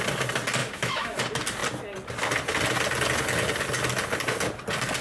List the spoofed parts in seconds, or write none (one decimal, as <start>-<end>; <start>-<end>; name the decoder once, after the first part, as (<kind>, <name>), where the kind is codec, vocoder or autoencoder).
0.6-1.2 (autoencoder, DAC-VAE)